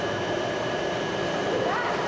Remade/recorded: remade